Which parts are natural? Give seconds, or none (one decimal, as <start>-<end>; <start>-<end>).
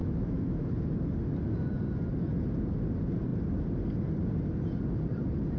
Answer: 0.7-5.6